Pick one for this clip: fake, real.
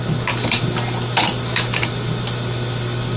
real